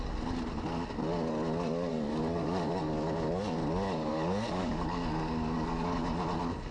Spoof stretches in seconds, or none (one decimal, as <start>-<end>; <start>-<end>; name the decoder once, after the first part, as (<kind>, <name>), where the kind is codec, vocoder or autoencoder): 1.9-2.8 (codec, DAC); 4.1-6.0